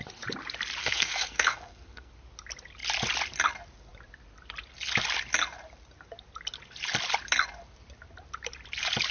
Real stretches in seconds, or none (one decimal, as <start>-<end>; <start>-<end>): 0.0-0.8; 2.1-9.1

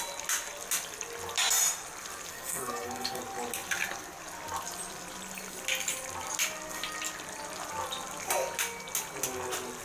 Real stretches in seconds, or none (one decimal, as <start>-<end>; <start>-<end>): 0.0-2.3; 3.2-9.8